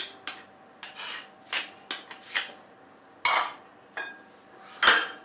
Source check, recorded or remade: recorded